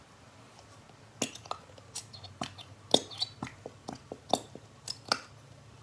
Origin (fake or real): real